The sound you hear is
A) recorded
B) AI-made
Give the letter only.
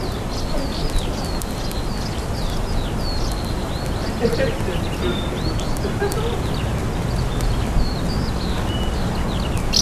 A